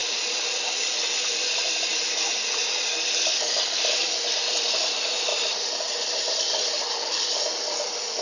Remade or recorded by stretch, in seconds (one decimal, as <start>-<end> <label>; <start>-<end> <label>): 0.0-0.5 remade; 0.5-5.3 recorded; 5.3-7.7 remade; 7.7-8.2 recorded